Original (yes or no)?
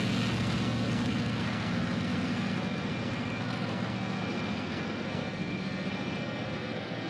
no